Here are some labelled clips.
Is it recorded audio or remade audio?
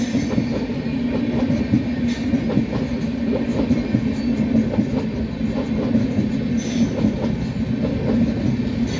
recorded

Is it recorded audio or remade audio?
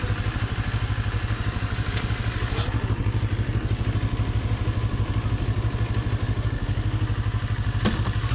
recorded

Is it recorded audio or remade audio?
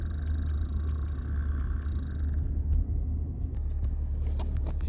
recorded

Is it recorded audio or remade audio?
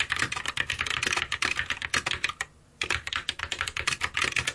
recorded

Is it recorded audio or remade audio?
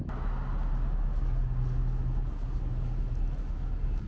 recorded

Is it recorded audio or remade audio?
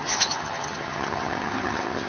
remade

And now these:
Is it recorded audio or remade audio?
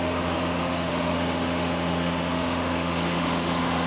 remade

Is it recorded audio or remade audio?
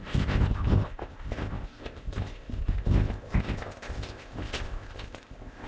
remade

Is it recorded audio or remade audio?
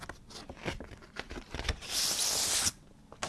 recorded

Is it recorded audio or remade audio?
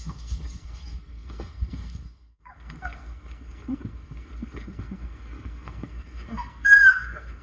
remade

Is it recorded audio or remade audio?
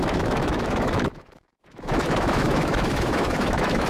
remade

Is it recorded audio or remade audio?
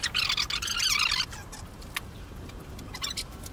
recorded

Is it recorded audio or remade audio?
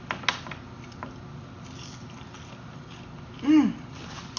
recorded